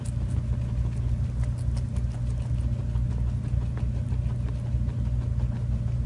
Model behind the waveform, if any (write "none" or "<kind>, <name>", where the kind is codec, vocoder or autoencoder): none